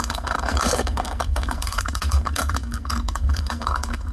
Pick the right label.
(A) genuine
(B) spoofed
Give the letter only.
B